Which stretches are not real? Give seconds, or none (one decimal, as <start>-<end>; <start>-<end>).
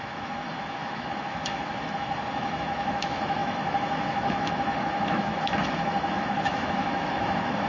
0.0-7.7